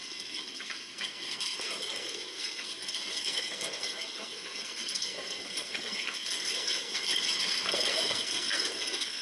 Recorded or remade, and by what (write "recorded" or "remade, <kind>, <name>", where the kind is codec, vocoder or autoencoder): remade, codec, SNAC